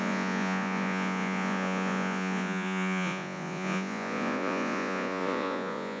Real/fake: fake